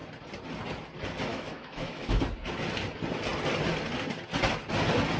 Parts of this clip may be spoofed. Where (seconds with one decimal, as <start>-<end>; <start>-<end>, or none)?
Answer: 1.3-2.2